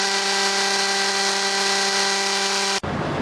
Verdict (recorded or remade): recorded